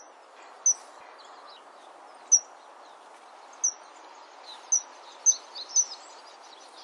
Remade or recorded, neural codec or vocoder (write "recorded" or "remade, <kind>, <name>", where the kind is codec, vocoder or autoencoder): recorded